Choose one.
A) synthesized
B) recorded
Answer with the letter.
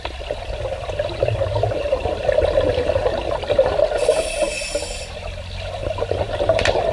B